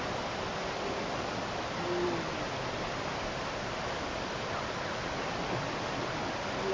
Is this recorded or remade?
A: recorded